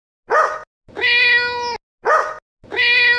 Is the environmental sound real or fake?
real